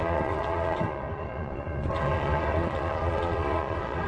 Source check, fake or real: fake